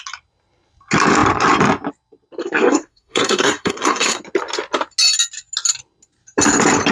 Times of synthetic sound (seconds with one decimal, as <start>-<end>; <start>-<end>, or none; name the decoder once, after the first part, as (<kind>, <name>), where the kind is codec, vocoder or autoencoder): 2.4-4.2 (codec, SNAC)